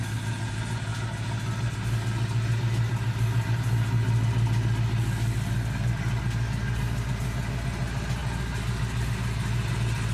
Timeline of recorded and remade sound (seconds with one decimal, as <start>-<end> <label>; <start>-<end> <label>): 0.0-10.1 recorded